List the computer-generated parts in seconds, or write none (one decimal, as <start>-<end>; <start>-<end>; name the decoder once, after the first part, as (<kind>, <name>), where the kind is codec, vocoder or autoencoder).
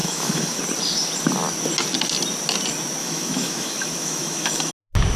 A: 0.0-0.6 (autoencoder, DAC-VAE); 3.0-4.7